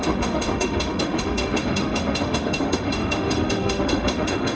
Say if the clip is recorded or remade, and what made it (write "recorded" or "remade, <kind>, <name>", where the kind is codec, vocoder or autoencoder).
remade, autoencoder, DAC-VAE